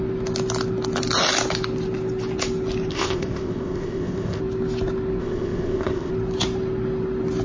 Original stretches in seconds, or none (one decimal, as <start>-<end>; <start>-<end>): 0.0-2.9; 4.4-5.2; 6.1-7.4